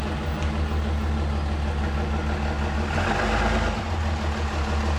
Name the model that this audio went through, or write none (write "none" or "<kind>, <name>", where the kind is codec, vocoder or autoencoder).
none